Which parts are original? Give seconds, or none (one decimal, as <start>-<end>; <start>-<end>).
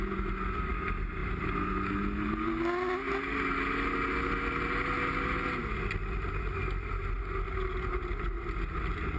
0.0-9.2